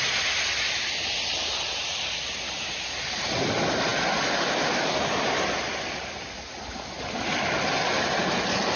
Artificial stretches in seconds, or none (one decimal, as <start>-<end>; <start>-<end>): none